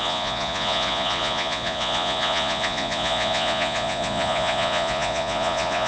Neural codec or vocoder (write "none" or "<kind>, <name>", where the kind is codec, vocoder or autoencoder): vocoder, Vocos